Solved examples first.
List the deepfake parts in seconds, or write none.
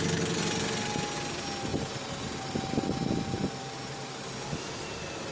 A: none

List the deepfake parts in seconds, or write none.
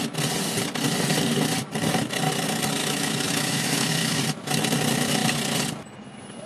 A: 2.8-4.2 (autoencoder, DAC-VAE)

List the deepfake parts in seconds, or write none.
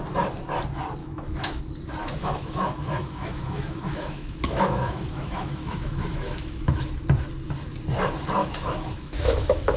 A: 1.0-1.6 (autoencoder, DAC-VAE); 2.0-6.9; 8.4-9.8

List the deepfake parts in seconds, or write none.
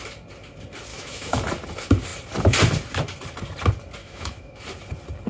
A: 0.9-1.4 (autoencoder, DAC-VAE); 4.0-4.6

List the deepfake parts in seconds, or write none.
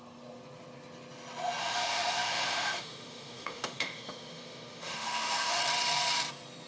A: 1.6-5.6 (autoencoder, DAC-VAE)